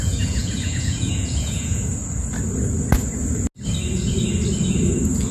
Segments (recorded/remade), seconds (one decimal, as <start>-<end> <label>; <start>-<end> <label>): 0.0-1.9 remade; 1.9-5.3 recorded